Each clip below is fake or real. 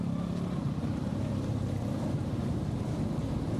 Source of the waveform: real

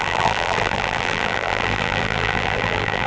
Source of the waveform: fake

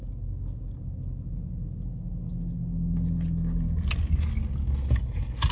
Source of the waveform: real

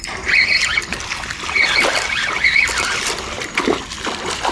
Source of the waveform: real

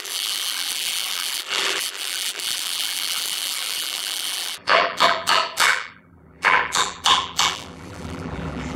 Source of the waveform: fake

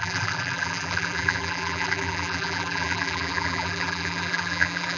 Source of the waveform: fake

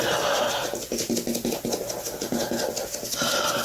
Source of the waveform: real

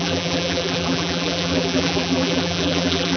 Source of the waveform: fake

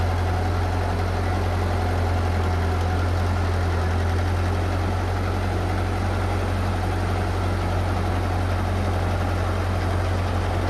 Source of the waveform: real